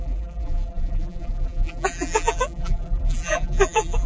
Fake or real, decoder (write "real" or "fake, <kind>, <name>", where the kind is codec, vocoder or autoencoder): fake, vocoder, BigVGAN v2